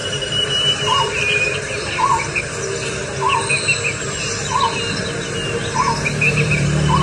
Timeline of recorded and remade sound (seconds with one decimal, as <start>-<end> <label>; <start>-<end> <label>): 0.0-3.0 remade; 3.0-6.3 recorded; 6.3-7.0 remade